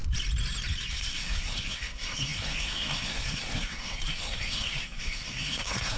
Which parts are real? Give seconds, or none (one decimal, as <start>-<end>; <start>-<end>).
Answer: 0.0-0.9